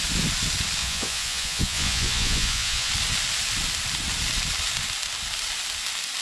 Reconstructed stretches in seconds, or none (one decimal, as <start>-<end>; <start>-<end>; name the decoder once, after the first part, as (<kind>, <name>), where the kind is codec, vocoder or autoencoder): 0.8-2.9 (vocoder, Vocos)